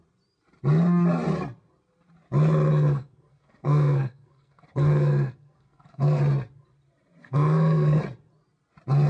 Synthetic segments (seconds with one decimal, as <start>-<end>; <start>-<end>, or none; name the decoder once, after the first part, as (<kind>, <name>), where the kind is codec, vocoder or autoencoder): 2.7-6.2 (codec, SNAC); 7.2-8.0